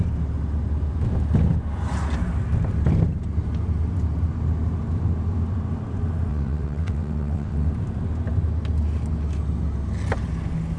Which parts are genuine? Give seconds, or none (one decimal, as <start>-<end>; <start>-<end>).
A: 0.0-6.3; 7.7-10.8